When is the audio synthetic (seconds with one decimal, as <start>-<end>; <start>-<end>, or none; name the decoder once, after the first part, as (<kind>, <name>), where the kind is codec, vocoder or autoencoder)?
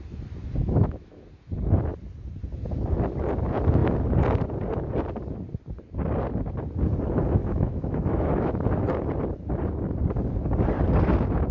0.6-1.2 (autoencoder, DAC-VAE); 7.4-8.5